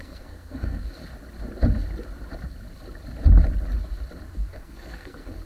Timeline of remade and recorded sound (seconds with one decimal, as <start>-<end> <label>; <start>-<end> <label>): 0.0-1.0 remade; 1.0-4.3 recorded; 4.3-5.5 remade